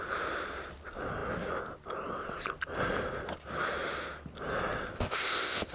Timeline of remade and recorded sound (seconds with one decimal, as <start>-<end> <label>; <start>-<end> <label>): 0.0-4.9 recorded; 4.9-5.7 remade